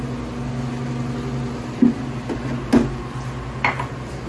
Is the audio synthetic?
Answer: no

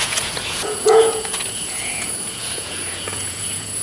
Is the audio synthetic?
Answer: yes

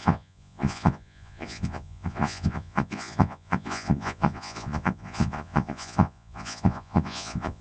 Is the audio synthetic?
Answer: yes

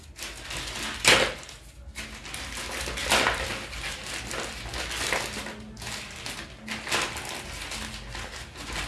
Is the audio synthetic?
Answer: no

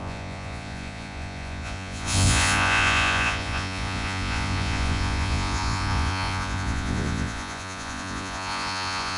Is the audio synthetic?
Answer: yes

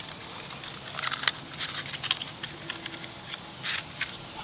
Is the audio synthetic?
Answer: no